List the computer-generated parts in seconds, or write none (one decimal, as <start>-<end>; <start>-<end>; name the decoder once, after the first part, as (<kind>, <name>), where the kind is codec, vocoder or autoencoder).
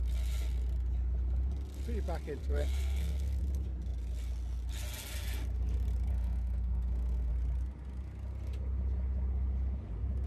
2.4-3.4 (codec, SNAC); 6.1-7.3